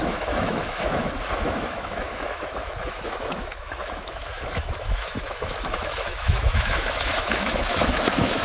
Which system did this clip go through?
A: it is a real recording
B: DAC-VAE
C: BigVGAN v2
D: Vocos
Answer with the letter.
B